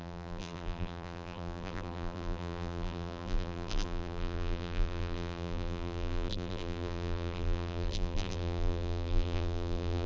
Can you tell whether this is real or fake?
fake